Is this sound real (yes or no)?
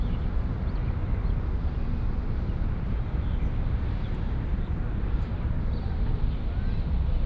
yes